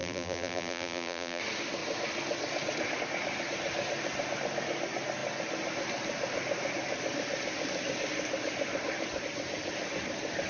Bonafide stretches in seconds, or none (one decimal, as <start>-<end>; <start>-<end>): 1.4-10.5